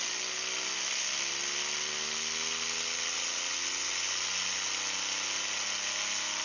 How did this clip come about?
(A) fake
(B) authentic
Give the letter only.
B